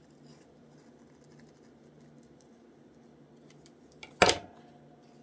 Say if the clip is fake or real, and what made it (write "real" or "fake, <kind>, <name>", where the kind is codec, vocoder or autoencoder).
real